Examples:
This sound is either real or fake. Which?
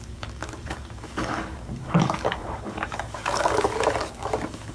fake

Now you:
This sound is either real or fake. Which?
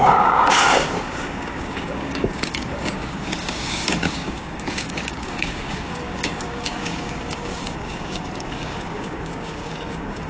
fake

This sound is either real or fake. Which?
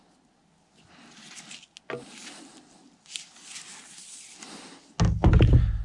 real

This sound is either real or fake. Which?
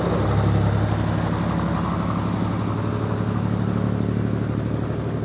real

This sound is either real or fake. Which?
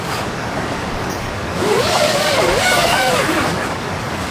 fake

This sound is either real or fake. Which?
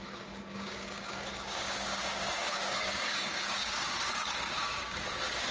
fake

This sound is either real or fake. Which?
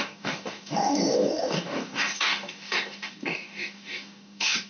fake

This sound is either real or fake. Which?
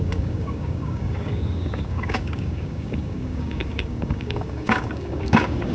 fake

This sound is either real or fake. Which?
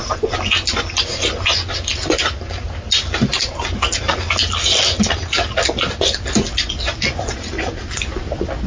real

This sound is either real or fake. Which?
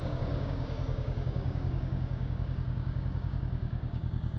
fake